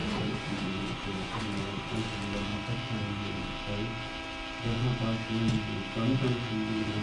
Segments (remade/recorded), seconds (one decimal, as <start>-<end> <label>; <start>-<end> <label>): 0.0-1.4 remade; 1.4-7.0 recorded